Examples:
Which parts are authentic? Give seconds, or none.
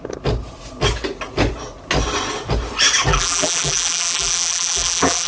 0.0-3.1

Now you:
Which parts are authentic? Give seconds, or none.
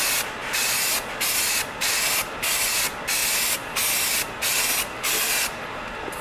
0.0-6.2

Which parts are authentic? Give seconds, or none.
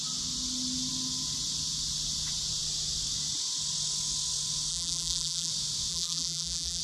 0.0-4.7; 5.5-5.9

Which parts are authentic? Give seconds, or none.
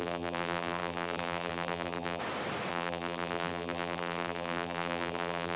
2.2-2.7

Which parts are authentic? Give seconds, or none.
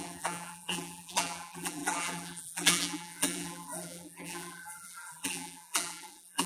none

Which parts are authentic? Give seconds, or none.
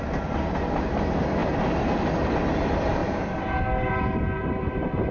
0.0-1.4; 2.1-3.0; 3.9-4.4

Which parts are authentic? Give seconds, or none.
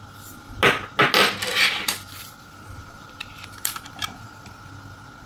0.0-1.5; 4.7-5.3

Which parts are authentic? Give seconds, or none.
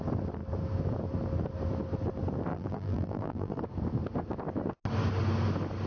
0.0-2.5; 3.6-5.9